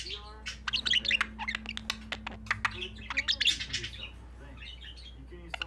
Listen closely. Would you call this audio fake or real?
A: real